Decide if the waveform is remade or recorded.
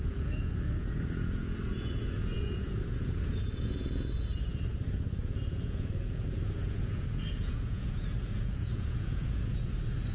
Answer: remade